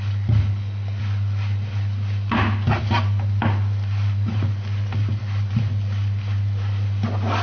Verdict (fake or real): real